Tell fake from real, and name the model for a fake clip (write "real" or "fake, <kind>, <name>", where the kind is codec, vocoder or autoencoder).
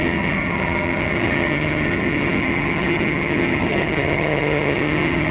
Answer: fake, vocoder, HiFi-GAN